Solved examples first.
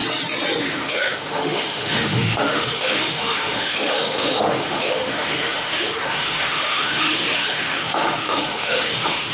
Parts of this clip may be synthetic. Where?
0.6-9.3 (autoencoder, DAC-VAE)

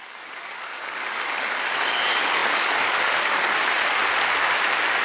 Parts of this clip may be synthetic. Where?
0.0-4.0 (codec, DAC)

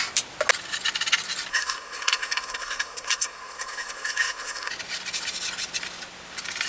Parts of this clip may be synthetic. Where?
1.5-4.7 (codec, SNAC)